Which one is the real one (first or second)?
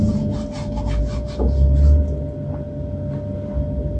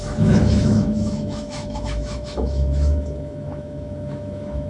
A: first